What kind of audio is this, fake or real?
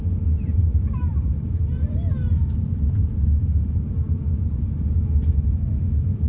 fake